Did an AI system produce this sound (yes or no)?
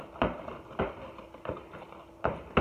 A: no